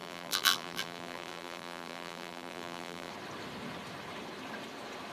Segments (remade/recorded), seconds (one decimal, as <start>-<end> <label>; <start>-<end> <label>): 0.0-3.1 remade; 3.1-5.1 recorded